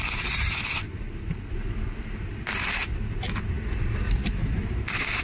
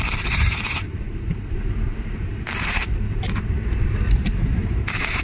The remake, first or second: second